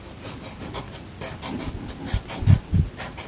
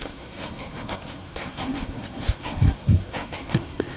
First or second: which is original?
first